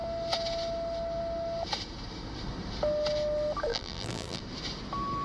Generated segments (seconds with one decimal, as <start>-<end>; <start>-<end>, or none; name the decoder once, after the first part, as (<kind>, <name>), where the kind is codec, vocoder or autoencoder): 3.7-4.4 (vocoder, BigVGAN v2)